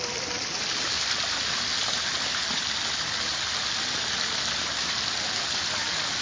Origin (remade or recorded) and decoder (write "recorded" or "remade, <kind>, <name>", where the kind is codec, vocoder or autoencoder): recorded